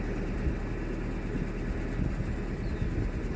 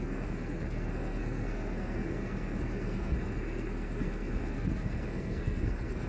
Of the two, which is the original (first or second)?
first